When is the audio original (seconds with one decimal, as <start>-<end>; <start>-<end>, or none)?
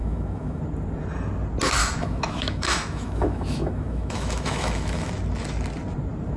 0.6-1.8; 5.1-6.4